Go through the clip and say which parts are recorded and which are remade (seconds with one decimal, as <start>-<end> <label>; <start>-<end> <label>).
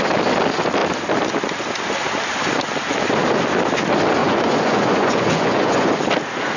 0.0-4.2 recorded; 4.2-5.9 remade; 5.9-6.6 recorded